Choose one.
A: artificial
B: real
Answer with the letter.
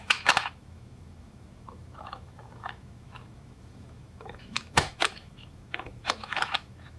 A